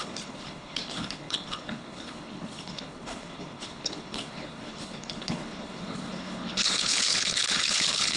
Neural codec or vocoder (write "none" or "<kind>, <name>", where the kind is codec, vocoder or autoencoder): codec, HILCodec